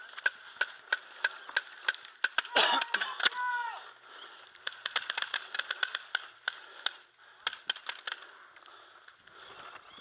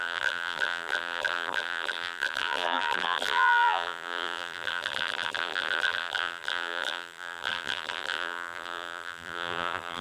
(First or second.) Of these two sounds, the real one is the first